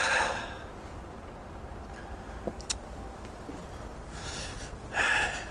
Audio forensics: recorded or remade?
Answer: recorded